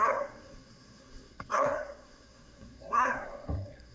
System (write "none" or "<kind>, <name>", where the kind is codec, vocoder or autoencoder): codec, SNAC